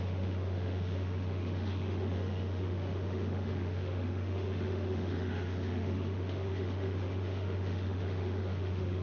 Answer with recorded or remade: remade